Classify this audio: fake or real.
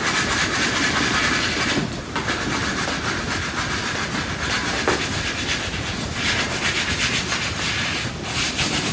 real